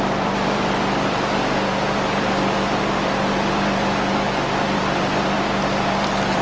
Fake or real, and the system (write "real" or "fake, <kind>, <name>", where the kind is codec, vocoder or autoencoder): fake, vocoder, BigVGAN v2